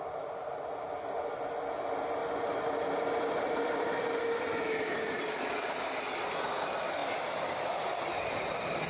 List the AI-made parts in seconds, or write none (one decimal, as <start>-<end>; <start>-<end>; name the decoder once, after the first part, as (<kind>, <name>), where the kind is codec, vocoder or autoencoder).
none